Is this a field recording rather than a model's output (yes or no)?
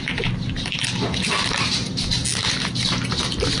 yes